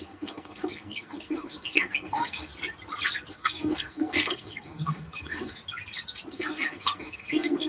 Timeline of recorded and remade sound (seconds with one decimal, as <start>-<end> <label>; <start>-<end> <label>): 0.0-2.5 remade; 2.5-3.3 recorded; 3.3-5.6 remade; 5.6-6.3 recorded; 6.3-7.7 remade